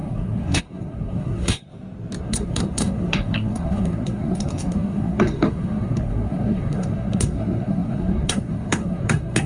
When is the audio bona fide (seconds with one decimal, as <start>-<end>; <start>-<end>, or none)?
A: 1.7-2.2